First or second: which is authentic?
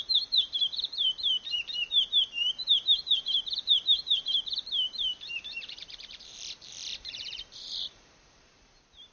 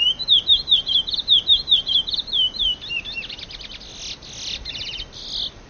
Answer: second